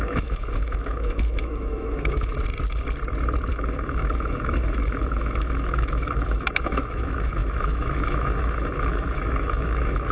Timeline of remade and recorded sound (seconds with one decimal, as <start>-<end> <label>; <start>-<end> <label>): 0.0-2.3 remade; 2.3-3.5 recorded; 3.5-10.1 remade